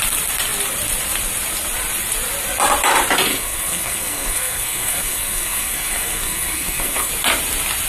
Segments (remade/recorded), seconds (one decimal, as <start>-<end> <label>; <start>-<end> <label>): 0.0-3.3 recorded; 3.3-7.1 remade; 7.1-7.9 recorded

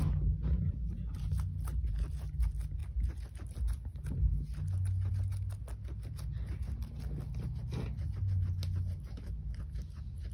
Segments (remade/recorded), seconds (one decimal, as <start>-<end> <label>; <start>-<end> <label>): 0.0-10.3 recorded

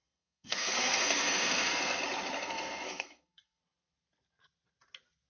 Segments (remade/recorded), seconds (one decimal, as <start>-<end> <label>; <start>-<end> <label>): 0.0-2.0 remade; 2.0-2.4 recorded; 2.4-3.6 remade; 3.6-5.3 recorded